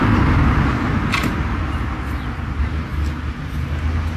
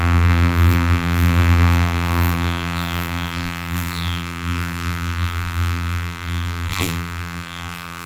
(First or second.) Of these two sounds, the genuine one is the first